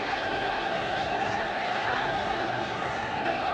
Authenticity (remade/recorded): remade